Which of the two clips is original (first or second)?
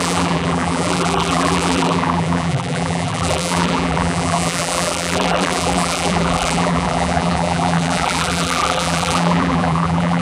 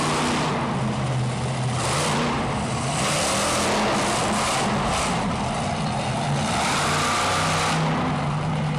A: second